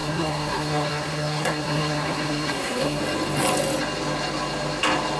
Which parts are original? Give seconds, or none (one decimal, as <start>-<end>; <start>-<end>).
3.0-5.2